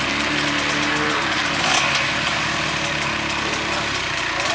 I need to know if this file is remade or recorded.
recorded